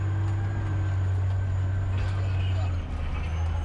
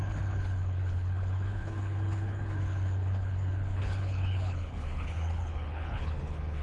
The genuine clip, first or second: first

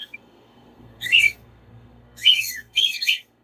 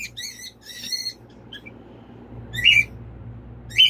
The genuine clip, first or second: second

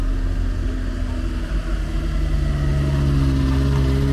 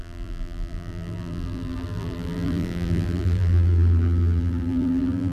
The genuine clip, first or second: first